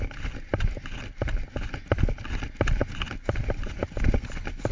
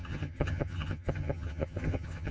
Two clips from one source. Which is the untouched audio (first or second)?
first